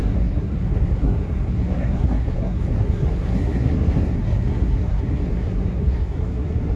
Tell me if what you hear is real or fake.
fake